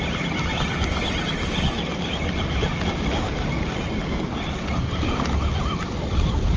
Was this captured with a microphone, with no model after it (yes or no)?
yes